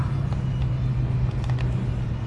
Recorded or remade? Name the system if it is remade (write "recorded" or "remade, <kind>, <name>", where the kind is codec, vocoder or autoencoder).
recorded